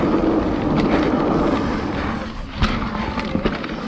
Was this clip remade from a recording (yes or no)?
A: no